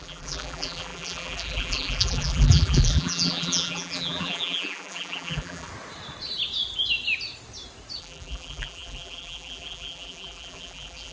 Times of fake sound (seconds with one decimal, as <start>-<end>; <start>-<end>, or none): 0.0-5.7; 8.0-11.1